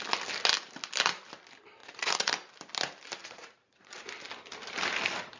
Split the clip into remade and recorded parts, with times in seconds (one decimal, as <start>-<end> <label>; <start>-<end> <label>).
0.0-1.8 recorded; 1.8-2.3 remade; 2.3-3.2 recorded; 3.2-4.1 remade; 4.1-5.4 recorded